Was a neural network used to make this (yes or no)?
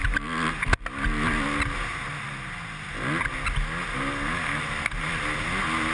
no